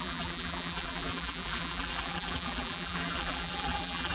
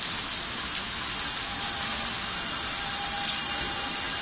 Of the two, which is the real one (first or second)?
second